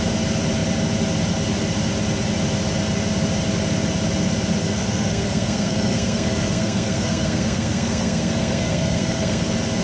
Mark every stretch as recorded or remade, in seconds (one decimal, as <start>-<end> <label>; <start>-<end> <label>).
0.0-4.6 recorded; 4.6-9.4 remade; 9.4-9.8 recorded